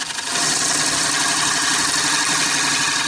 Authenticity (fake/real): real